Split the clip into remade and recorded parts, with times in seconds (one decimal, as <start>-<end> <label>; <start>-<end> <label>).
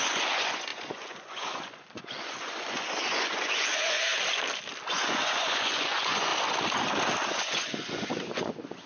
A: 0.0-4.1 remade; 4.1-4.9 recorded; 4.9-6.3 remade; 6.3-7.3 recorded; 7.3-8.9 remade